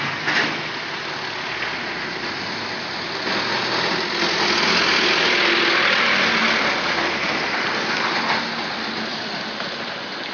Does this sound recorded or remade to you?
recorded